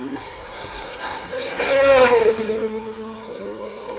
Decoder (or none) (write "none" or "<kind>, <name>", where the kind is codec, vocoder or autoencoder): codec, SNAC